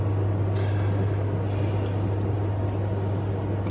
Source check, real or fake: real